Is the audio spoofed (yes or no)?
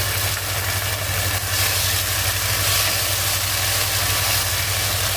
no